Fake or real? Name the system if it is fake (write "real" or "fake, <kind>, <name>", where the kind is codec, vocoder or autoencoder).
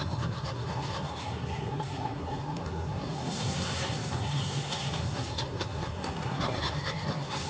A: fake, codec, SNAC